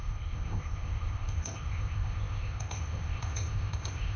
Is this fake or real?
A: fake